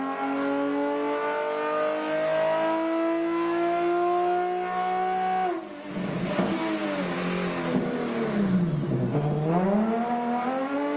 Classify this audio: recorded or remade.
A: recorded